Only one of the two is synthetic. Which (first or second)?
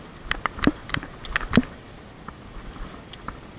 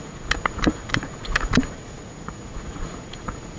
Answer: second